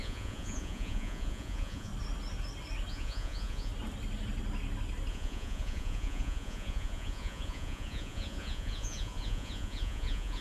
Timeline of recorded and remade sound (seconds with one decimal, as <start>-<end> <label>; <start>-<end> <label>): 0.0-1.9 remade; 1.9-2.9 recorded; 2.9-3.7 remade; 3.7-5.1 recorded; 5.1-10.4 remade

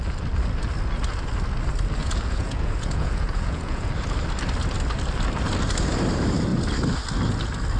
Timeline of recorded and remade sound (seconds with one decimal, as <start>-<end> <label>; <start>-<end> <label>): 0.0-2.0 recorded; 2.0-3.9 remade; 3.9-7.8 recorded

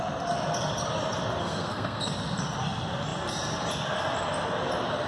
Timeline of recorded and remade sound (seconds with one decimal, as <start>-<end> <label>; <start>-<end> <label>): 0.0-1.4 recorded; 1.4-2.0 remade; 2.0-5.1 recorded

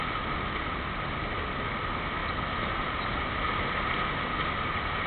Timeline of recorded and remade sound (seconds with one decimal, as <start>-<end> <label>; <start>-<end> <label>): 0.0-5.1 recorded

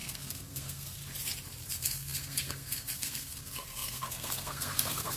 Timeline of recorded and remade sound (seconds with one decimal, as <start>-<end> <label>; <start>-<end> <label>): 0.0-1.0 remade; 1.0-1.7 recorded; 1.7-5.2 remade

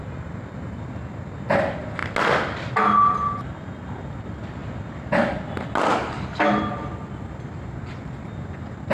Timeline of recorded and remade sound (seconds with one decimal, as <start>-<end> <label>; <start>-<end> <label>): 0.0-5.9 recorded; 5.9-6.5 remade; 6.5-8.9 recorded

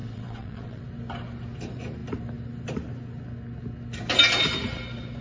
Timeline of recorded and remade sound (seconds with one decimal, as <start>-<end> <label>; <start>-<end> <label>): 0.0-0.8 remade; 0.8-5.2 recorded

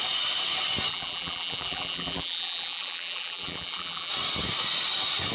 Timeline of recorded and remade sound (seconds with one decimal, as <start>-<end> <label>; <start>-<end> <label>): 0.0-0.9 recorded; 0.9-4.1 remade; 4.1-5.3 recorded